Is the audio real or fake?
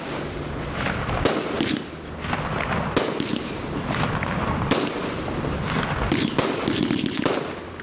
real